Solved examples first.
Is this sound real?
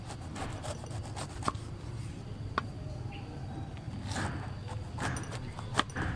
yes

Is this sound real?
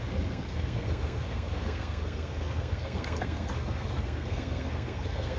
no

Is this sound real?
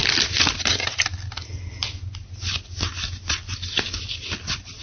yes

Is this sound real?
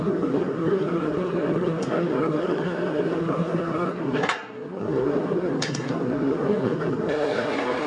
no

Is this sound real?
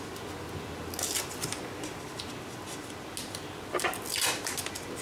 yes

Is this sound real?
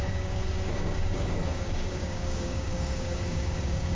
no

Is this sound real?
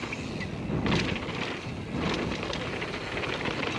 yes